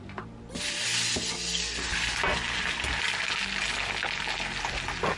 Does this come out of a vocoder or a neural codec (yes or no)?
no